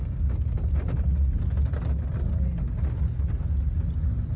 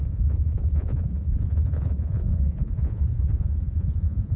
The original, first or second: first